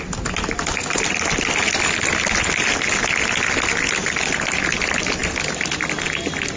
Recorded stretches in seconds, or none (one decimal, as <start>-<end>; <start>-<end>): 0.0-6.6